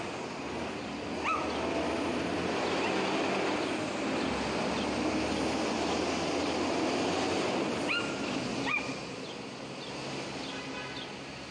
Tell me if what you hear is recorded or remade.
recorded